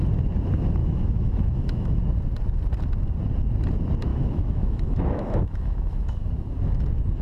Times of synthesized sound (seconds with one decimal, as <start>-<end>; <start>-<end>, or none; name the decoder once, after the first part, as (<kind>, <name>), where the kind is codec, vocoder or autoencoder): 0.8-2.0 (autoencoder, DAC-VAE); 4.1-6.3